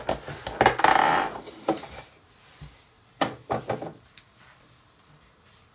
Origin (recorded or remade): recorded